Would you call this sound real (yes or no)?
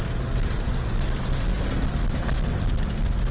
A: yes